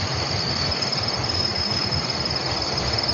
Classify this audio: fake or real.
real